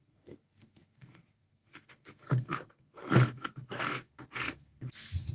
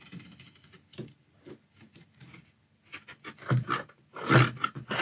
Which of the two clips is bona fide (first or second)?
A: second